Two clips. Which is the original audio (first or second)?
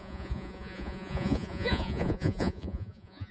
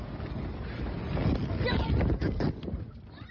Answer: second